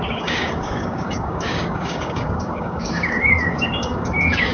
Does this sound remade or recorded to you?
remade